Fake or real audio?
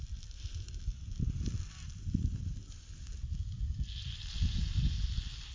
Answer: real